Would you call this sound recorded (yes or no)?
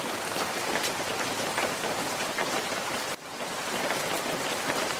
no